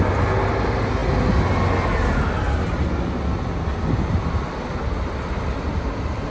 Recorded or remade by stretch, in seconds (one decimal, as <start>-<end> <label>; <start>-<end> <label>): 0.0-6.3 recorded